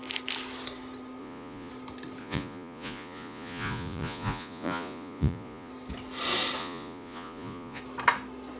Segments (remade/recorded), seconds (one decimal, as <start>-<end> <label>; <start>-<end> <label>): 0.0-1.2 recorded; 1.2-1.7 remade; 1.7-2.2 recorded; 2.2-5.7 remade; 5.7-6.6 recorded; 6.6-7.8 remade; 7.8-8.6 recorded